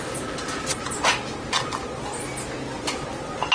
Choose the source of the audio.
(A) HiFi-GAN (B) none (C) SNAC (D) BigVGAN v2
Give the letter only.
B